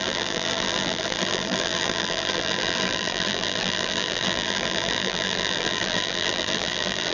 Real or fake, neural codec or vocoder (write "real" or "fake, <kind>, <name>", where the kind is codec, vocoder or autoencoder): fake, vocoder, BigVGAN v2